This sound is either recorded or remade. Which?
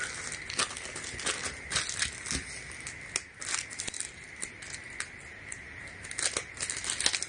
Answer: recorded